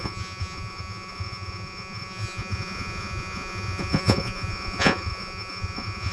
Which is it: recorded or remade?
remade